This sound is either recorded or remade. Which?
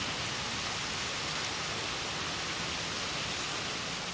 recorded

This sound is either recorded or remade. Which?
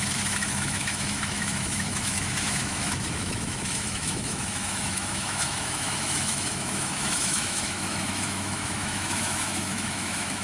remade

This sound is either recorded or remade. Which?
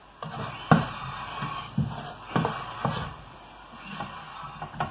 recorded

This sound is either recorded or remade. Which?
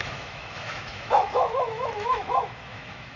remade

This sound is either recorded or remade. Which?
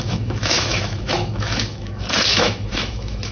remade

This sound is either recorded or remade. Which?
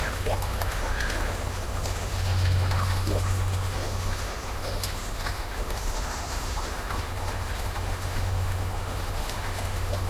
remade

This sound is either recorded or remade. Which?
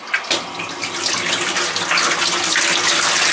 recorded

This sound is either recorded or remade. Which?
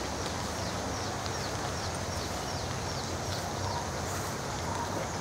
recorded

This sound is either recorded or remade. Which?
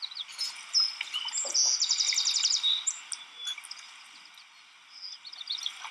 recorded